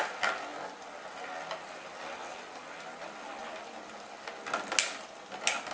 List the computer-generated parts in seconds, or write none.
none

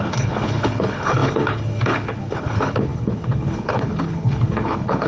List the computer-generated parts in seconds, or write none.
0.0-5.1 (codec, HILCodec)

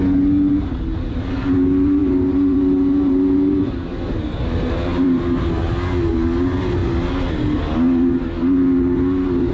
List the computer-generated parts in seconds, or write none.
2.0-5.2 (vocoder, BigVGAN v2)